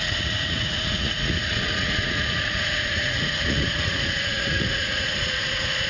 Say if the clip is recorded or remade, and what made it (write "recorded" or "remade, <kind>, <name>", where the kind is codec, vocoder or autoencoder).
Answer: remade, vocoder, Vocos